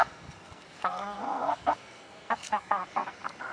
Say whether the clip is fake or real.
fake